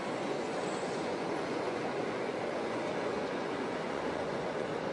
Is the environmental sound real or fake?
fake